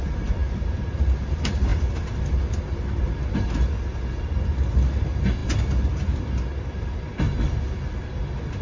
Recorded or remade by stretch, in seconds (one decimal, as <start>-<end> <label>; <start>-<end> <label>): 0.0-8.6 recorded